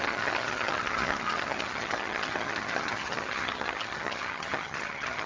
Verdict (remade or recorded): remade